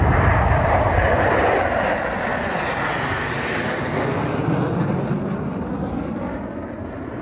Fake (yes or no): no